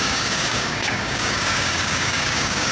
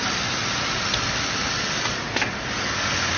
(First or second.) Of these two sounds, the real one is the second